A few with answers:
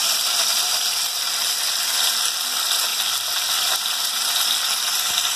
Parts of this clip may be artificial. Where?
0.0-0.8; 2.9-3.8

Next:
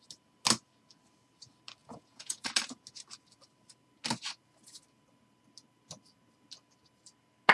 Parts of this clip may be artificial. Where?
1.8-2.5